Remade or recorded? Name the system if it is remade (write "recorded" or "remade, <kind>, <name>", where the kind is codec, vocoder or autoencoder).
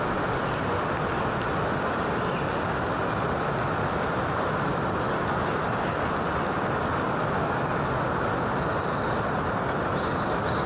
recorded